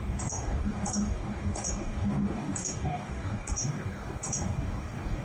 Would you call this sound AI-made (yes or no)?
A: yes